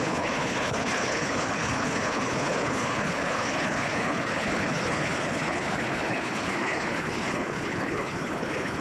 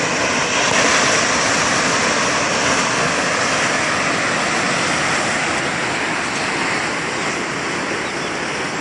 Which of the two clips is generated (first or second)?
first